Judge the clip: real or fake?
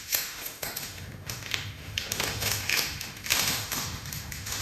fake